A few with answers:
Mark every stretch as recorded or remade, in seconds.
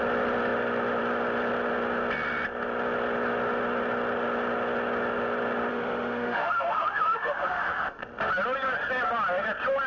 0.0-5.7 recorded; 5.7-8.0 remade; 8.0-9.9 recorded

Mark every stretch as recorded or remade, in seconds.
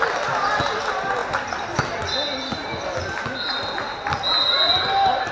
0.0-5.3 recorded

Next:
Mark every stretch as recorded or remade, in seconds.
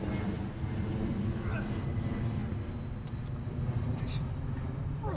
0.0-5.2 recorded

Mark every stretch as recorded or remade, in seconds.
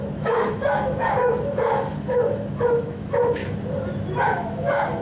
0.0-3.4 remade; 3.4-4.2 recorded; 4.2-5.0 remade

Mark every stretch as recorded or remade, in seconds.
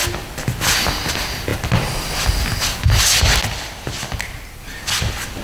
0.0-5.4 recorded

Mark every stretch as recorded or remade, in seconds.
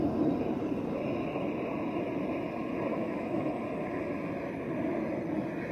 0.0-2.9 recorded; 2.9-3.5 remade; 3.5-5.7 recorded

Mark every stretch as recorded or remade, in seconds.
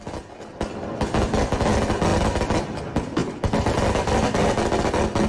0.0-5.3 recorded